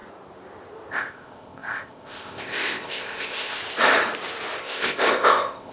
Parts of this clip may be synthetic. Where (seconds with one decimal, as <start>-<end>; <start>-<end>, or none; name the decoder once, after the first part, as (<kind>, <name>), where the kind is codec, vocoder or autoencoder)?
0.9-3.6 (codec, ZipCodec); 4.6-5.7